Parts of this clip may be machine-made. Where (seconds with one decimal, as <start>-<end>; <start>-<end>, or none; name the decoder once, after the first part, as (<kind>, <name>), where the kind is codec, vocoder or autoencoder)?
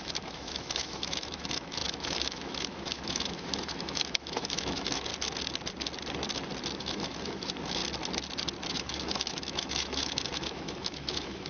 0.0-5.1 (autoencoder, DAC-VAE); 6.8-7.8; 8.7-11.5